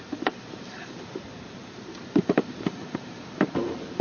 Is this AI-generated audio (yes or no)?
yes